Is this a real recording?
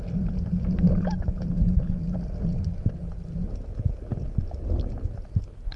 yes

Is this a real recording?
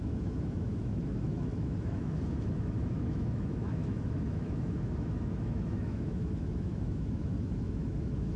no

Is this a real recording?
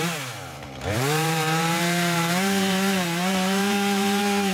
no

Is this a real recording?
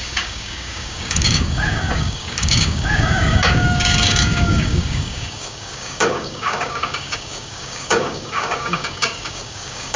no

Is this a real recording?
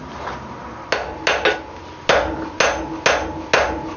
yes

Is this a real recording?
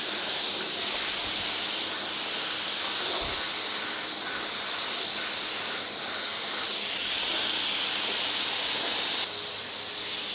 yes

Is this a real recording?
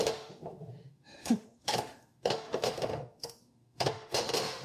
no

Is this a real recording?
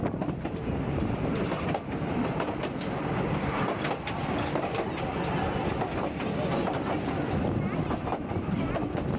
yes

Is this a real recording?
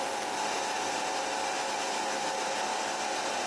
yes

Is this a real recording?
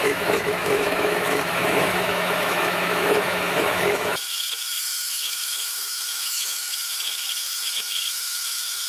no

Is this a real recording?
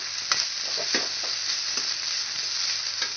yes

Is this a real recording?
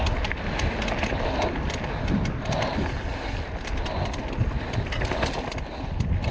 yes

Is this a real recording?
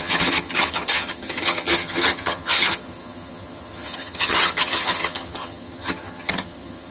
no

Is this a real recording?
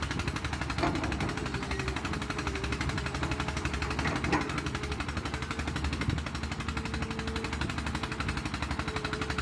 yes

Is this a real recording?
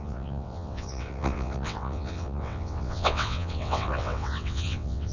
no